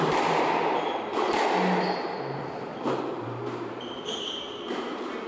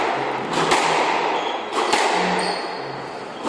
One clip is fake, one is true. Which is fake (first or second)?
first